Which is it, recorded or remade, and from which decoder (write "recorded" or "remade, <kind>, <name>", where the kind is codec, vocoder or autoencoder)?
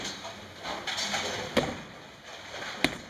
recorded